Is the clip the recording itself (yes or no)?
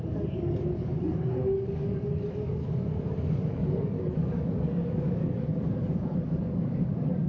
no